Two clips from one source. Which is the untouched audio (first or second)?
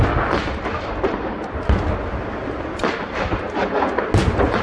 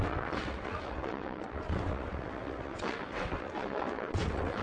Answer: first